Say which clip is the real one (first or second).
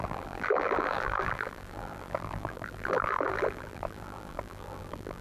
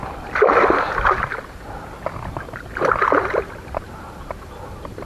second